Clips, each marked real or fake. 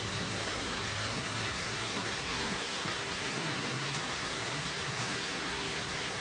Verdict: fake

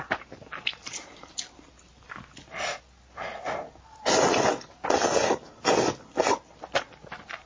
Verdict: real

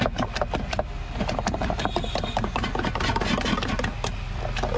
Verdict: real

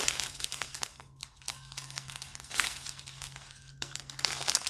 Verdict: fake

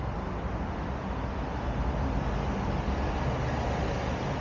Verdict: real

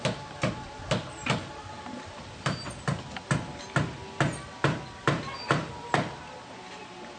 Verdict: real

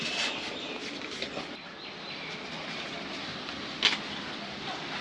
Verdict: real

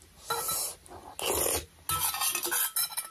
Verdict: real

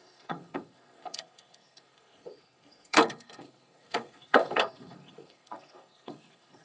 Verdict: fake